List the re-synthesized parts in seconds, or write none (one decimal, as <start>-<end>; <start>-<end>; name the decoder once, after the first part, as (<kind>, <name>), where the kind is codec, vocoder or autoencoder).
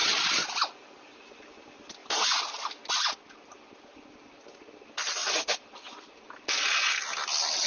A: 0.0-1.4 (vocoder, BigVGAN v2); 2.0-2.6; 5.2-6.9